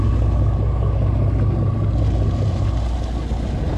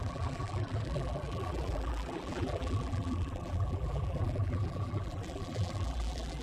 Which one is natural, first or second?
first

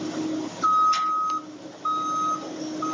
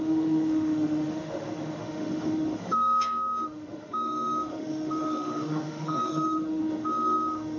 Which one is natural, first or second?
first